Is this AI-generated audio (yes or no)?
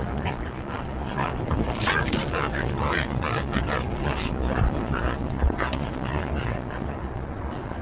yes